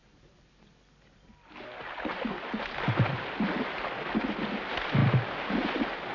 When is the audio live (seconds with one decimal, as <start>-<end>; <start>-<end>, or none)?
0.0-6.1